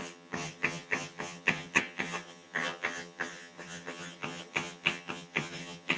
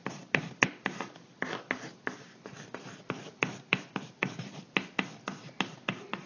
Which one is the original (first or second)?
second